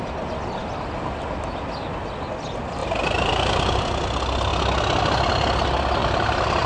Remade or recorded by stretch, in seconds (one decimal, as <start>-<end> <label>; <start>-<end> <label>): 0.0-2.8 recorded; 2.8-4.0 remade; 4.0-6.0 recorded; 6.0-6.7 remade